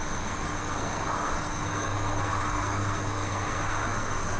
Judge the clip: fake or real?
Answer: fake